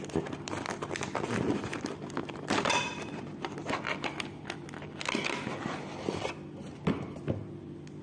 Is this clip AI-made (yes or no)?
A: no